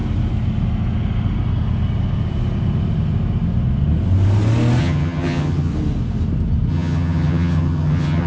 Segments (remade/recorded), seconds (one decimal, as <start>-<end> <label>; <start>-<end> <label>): 0.0-4.8 recorded; 4.8-5.7 remade; 5.7-6.7 recorded; 6.7-8.3 remade